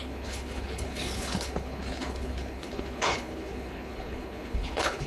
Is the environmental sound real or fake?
fake